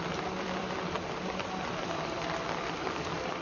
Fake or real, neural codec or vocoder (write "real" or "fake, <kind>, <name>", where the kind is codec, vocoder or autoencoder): fake, vocoder, BigVGAN v2